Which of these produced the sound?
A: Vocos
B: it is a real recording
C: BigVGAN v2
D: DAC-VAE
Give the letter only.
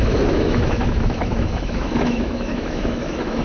D